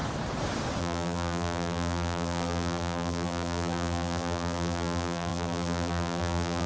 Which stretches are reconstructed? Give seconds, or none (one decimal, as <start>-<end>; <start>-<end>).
0.8-6.7